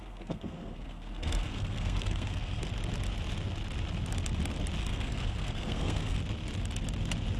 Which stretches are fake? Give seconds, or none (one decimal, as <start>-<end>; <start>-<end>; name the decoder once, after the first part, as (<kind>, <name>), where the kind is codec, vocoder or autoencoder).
0.0-2.7 (codec, SNAC); 4.8-6.2